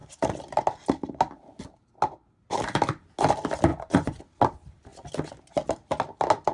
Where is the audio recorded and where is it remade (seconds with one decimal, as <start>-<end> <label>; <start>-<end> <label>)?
0.0-3.7 recorded; 3.7-4.2 remade; 4.2-6.5 recorded